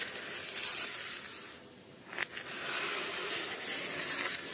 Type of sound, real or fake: real